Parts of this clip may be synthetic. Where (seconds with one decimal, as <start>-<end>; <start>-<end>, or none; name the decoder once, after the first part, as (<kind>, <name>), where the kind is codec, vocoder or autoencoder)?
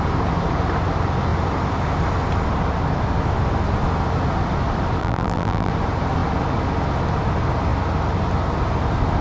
5.0-5.7 (vocoder, BigVGAN v2)